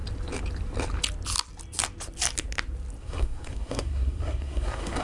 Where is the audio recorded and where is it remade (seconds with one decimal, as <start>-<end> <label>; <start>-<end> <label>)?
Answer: 0.0-3.0 recorded; 3.0-5.0 remade